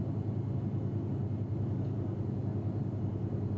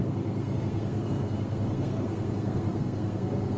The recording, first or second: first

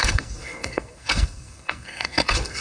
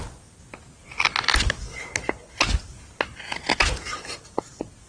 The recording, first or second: second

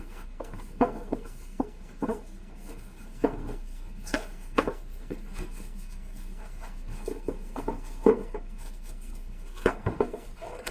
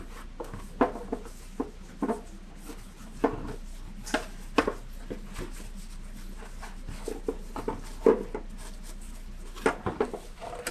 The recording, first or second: second